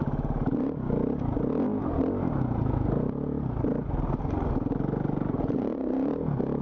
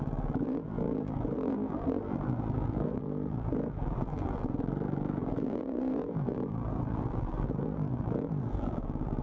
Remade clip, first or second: second